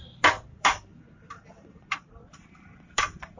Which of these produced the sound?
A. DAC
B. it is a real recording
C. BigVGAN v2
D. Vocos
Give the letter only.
C